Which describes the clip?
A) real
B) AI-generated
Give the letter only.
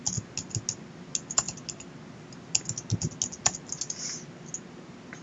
A